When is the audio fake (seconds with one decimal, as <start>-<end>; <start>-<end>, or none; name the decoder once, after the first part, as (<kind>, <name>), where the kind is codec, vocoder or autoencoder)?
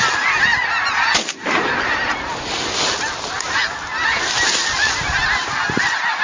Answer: none